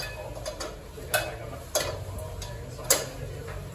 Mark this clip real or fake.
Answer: real